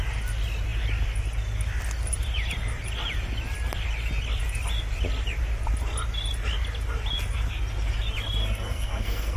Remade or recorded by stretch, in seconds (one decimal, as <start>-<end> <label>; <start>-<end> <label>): 0.0-8.4 recorded; 8.4-9.4 remade